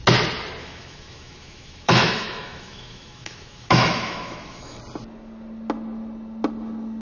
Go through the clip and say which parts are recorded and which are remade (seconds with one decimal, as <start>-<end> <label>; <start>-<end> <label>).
0.0-0.6 recorded; 0.6-4.8 remade; 4.8-7.0 recorded